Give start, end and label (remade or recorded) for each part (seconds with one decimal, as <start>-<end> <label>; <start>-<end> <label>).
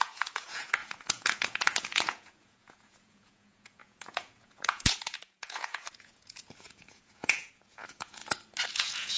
0.0-8.2 remade; 8.2-8.7 recorded; 8.7-9.2 remade